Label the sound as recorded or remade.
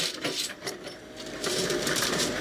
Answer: remade